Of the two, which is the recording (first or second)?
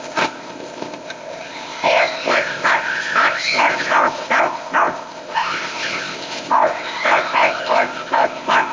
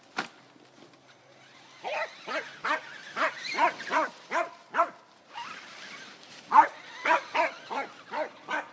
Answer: second